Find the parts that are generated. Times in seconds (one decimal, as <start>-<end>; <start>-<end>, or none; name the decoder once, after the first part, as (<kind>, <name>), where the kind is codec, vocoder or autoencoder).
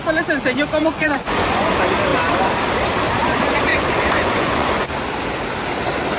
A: 1.0-1.7 (vocoder, Vocos); 3.7-4.9